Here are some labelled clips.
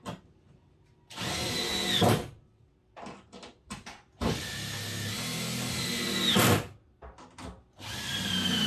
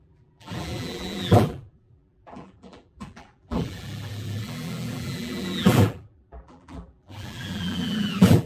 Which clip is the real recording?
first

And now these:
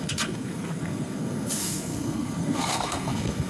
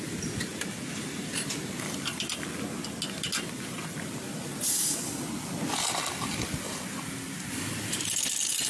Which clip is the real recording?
second